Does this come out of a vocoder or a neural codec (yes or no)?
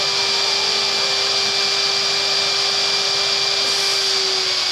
no